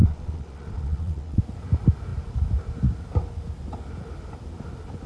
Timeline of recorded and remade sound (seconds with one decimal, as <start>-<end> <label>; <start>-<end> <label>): 0.0-1.4 remade; 1.4-5.1 recorded